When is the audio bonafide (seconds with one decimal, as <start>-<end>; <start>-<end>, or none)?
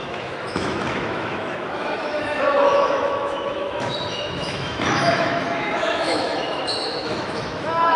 none